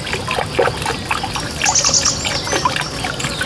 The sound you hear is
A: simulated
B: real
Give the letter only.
B